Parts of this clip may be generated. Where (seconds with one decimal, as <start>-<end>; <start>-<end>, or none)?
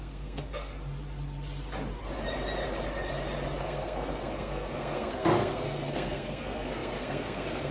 0.0-0.7; 3.6-7.7